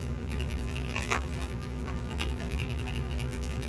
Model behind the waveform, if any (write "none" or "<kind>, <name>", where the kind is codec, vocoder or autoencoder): vocoder, BigVGAN v2